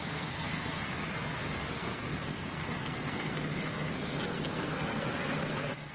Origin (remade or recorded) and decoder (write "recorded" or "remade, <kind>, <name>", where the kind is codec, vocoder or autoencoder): remade, codec, SNAC